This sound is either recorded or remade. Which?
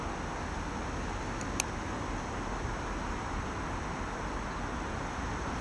recorded